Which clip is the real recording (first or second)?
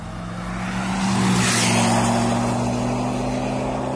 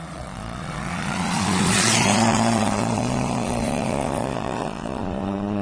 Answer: first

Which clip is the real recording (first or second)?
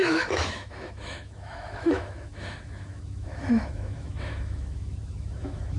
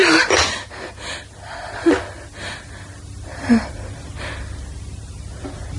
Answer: second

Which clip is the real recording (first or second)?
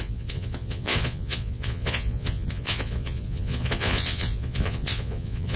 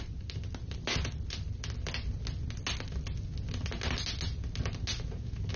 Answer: second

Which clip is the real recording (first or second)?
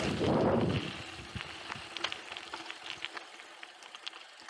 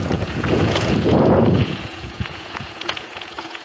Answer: first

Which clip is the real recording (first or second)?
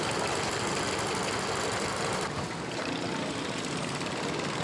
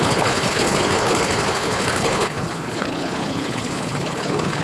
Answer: first